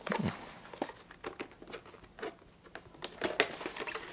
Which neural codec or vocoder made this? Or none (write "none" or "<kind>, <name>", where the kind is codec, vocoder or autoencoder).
none